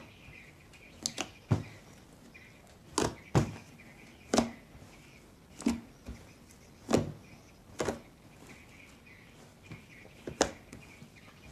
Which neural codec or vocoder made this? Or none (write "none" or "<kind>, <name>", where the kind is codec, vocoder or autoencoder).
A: none